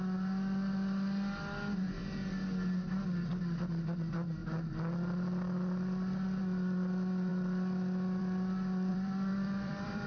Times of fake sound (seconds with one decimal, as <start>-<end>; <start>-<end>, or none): 8.9-10.1